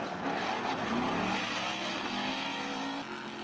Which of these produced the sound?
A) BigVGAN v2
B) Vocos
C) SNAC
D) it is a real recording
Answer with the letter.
D